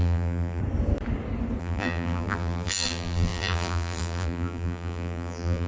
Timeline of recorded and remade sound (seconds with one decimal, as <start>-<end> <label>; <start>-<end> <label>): 0.0-0.6 remade; 0.6-1.6 recorded; 1.6-5.7 remade